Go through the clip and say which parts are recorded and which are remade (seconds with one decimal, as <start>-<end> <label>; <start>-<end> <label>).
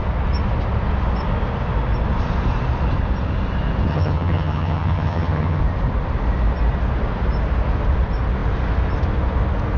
0.0-3.9 recorded; 3.9-5.6 remade; 5.6-9.8 recorded